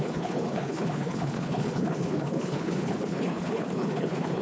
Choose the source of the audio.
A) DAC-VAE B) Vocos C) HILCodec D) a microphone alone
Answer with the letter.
C